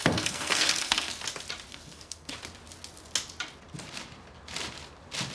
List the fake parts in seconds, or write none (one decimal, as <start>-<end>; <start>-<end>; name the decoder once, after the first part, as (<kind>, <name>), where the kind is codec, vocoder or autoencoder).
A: 0.0-1.2 (codec, SNAC); 1.7-2.3